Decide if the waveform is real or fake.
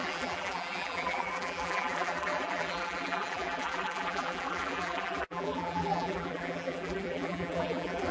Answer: fake